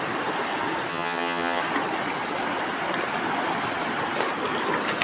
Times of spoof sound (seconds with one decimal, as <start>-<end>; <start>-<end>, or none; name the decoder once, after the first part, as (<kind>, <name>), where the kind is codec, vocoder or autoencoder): 0.9-1.6 (vocoder, HiFi-GAN)